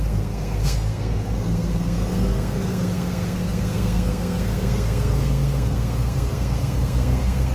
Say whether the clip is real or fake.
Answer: fake